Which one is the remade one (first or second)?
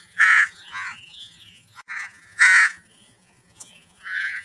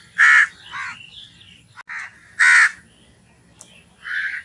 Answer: first